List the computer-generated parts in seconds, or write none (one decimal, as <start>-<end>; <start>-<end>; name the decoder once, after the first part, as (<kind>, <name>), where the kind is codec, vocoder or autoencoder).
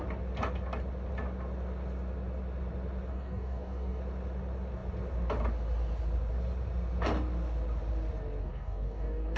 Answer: 3.1-4.0 (codec, DAC); 8.4-9.4